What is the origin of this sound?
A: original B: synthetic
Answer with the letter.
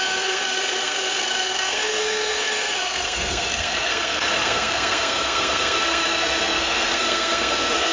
B